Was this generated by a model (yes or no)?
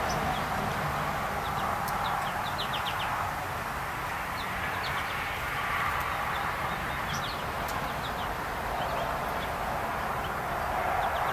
no